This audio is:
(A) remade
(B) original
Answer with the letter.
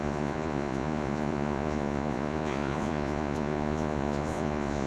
A